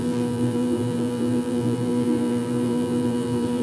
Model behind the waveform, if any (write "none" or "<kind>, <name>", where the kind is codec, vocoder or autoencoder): vocoder, BigVGAN v2